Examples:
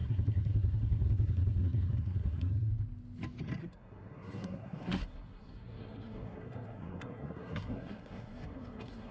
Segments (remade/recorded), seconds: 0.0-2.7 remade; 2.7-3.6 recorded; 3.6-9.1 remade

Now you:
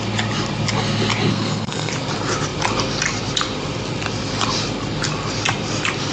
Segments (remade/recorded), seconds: 0.0-1.3 recorded; 1.3-1.9 remade; 1.9-6.1 recorded

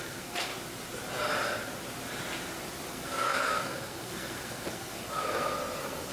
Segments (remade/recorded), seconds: 0.0-0.5 remade; 0.5-2.9 recorded; 2.9-6.1 remade

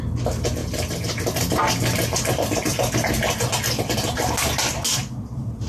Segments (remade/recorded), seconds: 0.0-5.7 recorded

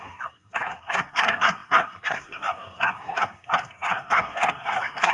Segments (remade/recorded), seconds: 0.0-5.1 remade

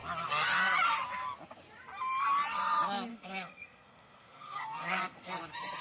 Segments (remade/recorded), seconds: 0.0-3.1 recorded; 3.1-5.3 remade; 5.3-5.8 recorded

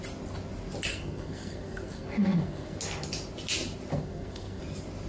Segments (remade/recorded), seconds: 0.0-0.9 recorded; 0.9-2.8 remade; 2.8-3.9 recorded; 3.9-4.6 remade; 4.6-5.1 recorded